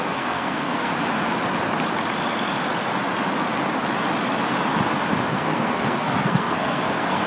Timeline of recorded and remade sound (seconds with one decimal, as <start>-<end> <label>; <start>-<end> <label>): 0.0-0.9 remade; 0.9-5.3 recorded; 5.3-7.3 remade